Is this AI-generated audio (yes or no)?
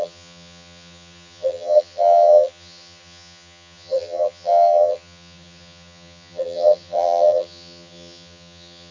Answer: yes